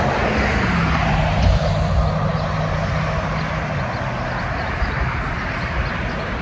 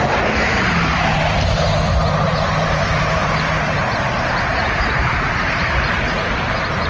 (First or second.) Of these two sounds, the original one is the first